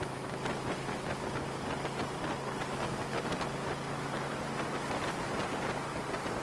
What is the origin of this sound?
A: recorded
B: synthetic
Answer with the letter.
A